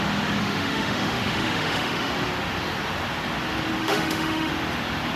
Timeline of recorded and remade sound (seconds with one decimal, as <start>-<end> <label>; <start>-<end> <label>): 0.0-0.4 recorded; 0.4-2.1 remade; 2.1-3.8 recorded; 3.8-4.5 remade; 4.5-5.2 recorded